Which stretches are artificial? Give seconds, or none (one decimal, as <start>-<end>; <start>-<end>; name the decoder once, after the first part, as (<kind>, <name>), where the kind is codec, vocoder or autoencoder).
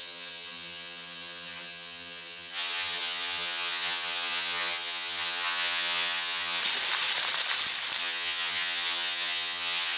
0.0-6.6 (vocoder, HiFi-GAN); 8.0-10.0